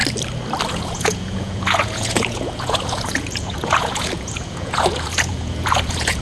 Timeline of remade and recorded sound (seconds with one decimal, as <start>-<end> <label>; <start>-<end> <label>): 0.0-0.7 recorded; 0.7-6.2 remade